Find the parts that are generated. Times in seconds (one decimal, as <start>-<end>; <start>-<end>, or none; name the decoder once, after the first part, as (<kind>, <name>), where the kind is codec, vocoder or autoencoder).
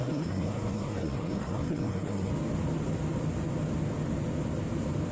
0.0-2.3 (codec, SNAC)